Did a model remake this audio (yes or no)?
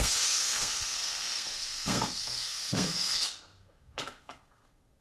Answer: yes